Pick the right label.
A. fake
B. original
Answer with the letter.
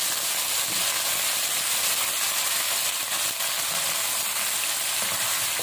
B